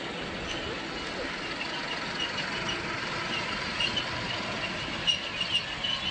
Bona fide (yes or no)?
yes